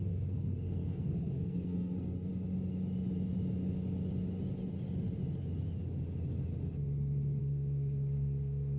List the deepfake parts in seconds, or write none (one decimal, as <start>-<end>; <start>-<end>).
0.0-2.3; 7.4-8.8